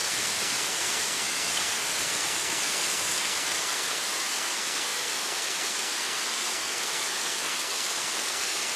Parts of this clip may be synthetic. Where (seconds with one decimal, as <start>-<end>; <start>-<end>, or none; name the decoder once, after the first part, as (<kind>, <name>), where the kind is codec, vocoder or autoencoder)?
0.0-8.8 (codec, SNAC)